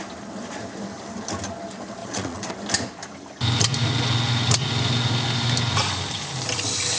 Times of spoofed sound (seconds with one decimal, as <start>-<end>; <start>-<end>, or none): 2.0-2.5